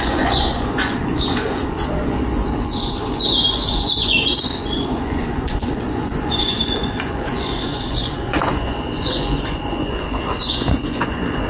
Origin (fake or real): fake